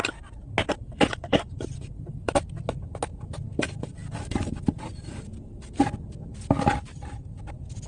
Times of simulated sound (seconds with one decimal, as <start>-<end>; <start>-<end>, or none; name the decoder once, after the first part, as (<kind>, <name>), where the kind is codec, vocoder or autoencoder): 0.6-2.4 (vocoder, BigVGAN v2); 4.0-5.7